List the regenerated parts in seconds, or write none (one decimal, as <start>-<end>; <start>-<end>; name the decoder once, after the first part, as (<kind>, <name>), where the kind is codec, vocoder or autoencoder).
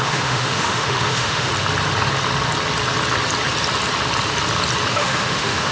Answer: 0.0-1.5 (autoencoder, DAC-VAE); 4.9-5.7